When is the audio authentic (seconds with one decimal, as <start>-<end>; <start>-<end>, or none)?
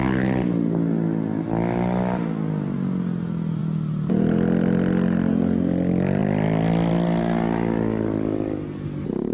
0.0-9.3